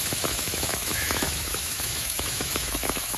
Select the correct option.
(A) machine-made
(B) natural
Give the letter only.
A